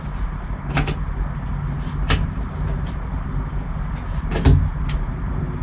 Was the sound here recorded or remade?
recorded